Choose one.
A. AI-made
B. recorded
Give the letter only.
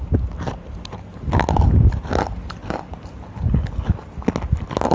A